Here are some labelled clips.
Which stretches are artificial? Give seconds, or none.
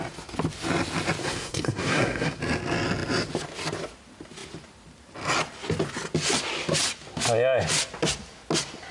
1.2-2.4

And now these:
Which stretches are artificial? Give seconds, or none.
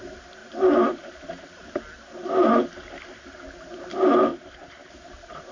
none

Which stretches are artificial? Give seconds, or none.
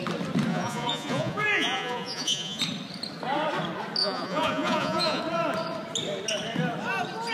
0.5-2.6; 4.0-5.2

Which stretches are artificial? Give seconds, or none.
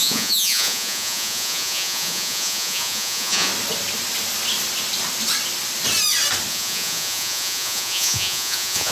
0.0-3.5; 6.5-8.9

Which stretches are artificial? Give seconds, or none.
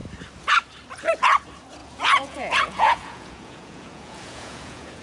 1.8-5.0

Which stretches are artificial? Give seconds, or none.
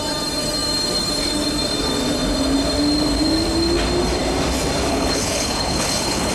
4.9-6.3